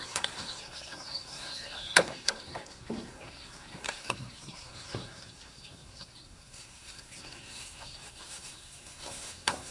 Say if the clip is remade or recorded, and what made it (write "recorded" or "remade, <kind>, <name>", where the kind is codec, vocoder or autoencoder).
remade, codec, SNAC